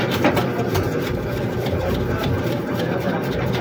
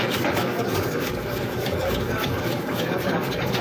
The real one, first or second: first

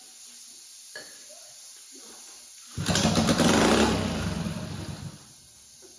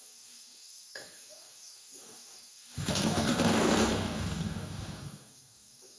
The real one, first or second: first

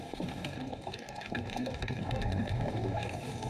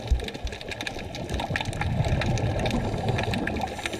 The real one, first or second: second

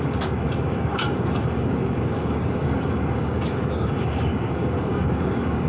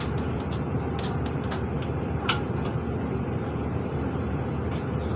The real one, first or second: second